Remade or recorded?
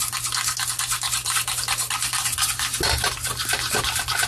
recorded